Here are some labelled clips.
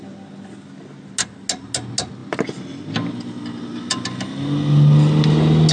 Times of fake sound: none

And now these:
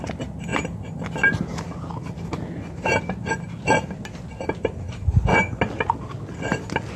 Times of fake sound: none